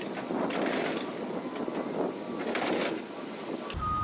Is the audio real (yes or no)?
yes